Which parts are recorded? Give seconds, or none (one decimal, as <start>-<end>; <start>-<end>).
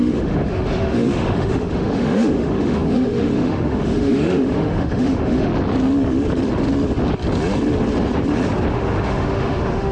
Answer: 5.5-8.7